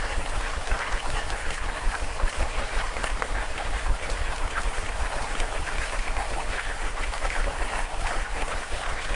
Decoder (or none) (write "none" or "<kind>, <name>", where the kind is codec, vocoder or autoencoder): codec, SNAC